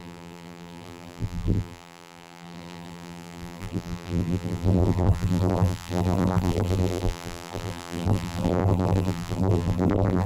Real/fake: fake